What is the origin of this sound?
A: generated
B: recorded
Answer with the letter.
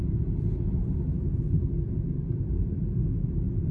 B